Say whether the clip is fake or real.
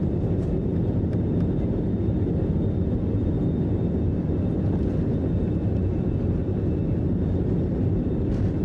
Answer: real